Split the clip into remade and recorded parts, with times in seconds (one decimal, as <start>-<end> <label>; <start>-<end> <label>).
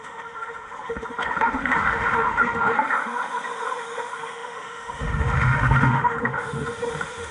0.0-7.3 remade